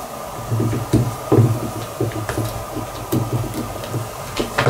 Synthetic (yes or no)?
no